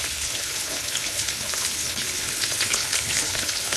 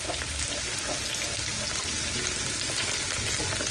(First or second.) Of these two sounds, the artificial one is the first